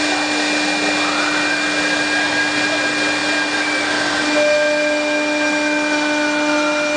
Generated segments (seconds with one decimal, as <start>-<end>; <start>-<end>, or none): none